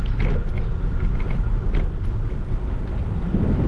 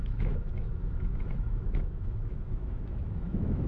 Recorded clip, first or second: first